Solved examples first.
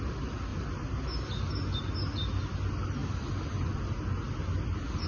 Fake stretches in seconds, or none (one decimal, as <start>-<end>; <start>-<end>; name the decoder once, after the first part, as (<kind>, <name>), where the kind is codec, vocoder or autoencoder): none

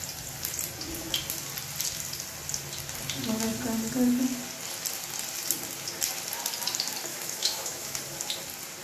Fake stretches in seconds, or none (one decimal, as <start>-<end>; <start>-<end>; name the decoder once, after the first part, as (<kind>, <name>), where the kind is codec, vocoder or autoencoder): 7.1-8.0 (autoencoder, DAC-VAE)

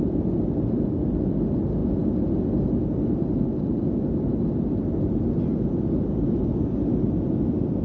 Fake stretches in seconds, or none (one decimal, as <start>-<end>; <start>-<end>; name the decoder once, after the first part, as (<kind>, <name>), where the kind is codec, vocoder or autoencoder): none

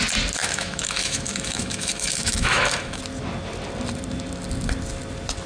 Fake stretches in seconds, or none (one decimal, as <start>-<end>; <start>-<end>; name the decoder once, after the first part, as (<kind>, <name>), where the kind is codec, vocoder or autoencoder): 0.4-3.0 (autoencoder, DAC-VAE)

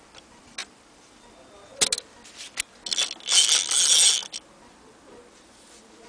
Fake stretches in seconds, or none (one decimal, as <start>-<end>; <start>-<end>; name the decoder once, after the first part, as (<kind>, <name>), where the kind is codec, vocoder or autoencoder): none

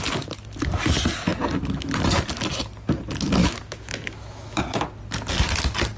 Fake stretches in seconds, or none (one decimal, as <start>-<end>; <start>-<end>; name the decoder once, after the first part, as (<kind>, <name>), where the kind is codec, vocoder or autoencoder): 3.4-4.6 (autoencoder, DAC-VAE)